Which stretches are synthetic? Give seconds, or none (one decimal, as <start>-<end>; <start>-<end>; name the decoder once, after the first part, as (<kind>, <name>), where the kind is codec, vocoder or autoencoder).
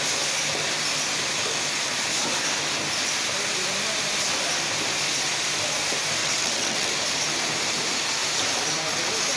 6.2-6.9 (vocoder, WaveNeXt)